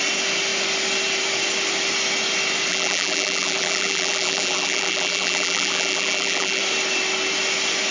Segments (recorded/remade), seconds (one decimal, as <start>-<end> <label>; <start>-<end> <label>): 0.0-2.7 recorded; 2.7-6.6 remade; 6.6-7.9 recorded